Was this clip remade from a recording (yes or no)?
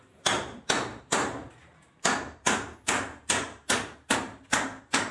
yes